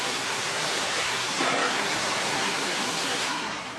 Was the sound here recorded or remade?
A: remade